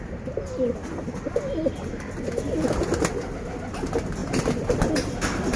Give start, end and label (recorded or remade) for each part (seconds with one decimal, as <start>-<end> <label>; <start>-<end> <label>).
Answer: 0.0-5.6 recorded